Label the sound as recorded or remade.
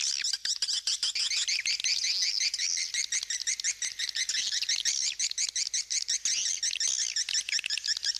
recorded